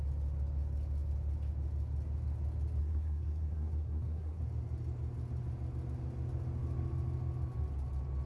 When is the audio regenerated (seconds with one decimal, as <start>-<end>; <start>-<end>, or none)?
2.8-4.4